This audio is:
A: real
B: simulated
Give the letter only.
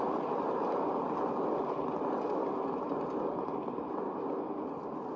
A